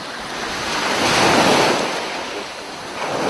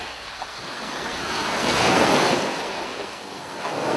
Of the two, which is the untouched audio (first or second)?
first